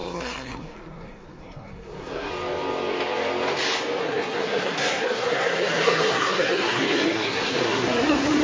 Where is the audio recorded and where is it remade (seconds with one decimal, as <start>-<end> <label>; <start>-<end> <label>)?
0.0-2.3 remade; 2.3-4.0 recorded; 4.0-8.4 remade